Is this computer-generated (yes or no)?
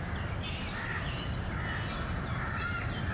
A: no